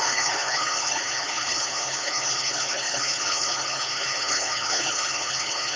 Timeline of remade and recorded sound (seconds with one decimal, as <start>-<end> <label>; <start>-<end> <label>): 0.0-5.8 remade